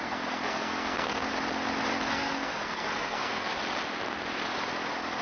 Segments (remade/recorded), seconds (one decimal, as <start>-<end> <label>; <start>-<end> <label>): 0.0-1.3 remade; 1.3-2.1 recorded; 2.1-3.5 remade; 3.5-5.2 recorded